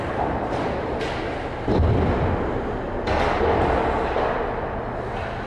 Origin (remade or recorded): recorded